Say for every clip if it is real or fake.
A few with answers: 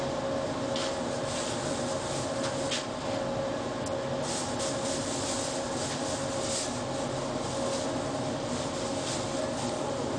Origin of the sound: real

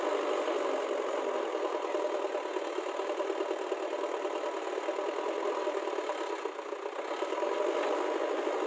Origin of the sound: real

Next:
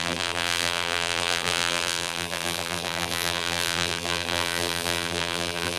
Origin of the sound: fake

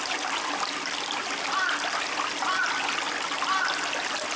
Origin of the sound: real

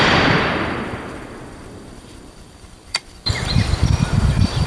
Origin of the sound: fake